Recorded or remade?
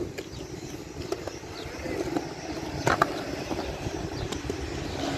recorded